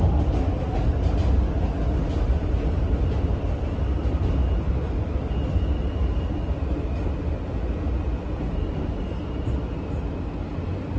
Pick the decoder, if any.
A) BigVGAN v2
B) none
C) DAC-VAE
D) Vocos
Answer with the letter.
B